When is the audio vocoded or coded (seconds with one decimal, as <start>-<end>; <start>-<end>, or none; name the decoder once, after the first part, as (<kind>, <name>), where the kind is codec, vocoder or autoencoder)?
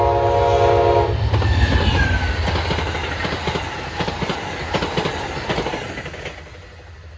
none